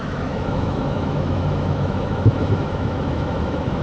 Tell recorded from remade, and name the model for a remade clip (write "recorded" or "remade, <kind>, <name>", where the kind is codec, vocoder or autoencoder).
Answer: remade, autoencoder, DAC-VAE